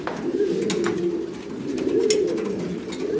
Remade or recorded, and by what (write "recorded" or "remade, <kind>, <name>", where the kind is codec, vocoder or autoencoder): recorded